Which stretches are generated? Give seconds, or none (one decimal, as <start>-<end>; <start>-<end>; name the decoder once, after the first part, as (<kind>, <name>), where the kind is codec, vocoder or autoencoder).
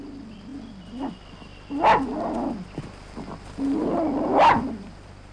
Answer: none